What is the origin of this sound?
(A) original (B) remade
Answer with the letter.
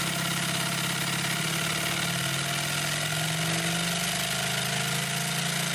A